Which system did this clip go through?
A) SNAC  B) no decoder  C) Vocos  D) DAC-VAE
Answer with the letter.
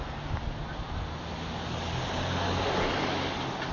B